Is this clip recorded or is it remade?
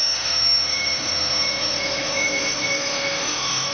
remade